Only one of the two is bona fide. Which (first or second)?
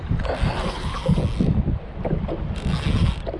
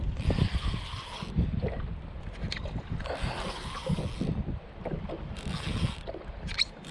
first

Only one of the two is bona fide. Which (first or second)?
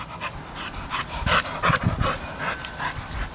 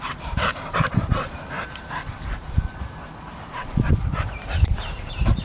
first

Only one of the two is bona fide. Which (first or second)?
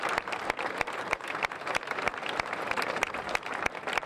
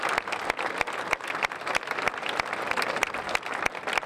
second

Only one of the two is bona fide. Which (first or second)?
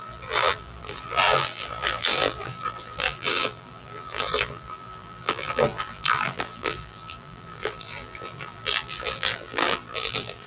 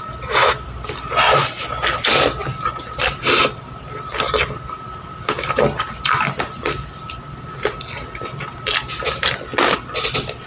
second